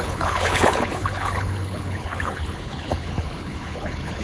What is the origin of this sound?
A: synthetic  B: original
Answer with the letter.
A